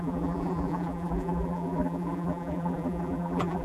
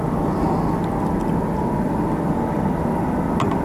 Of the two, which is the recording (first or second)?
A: second